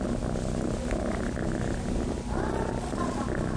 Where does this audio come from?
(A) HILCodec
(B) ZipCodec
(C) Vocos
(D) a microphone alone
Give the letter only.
D